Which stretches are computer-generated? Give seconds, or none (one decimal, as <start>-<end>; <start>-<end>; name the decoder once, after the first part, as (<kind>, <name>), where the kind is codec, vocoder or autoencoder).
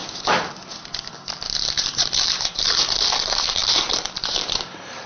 1.7-5.1 (vocoder, BigVGAN v2)